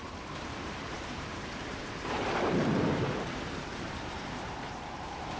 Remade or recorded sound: remade